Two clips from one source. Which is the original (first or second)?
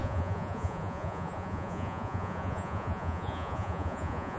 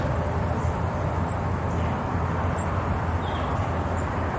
second